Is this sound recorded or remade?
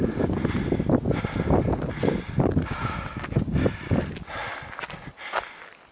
recorded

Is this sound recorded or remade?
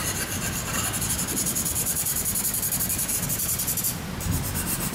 recorded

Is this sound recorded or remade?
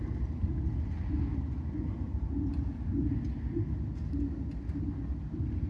recorded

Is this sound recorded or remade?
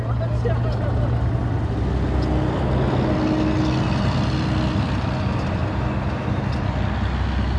recorded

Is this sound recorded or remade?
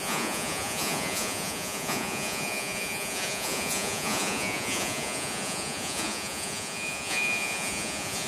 remade